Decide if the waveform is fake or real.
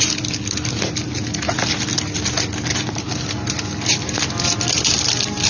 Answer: real